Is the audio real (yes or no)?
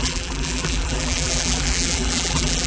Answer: no